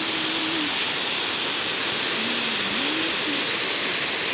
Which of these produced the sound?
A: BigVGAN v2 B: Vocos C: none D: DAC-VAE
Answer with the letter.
C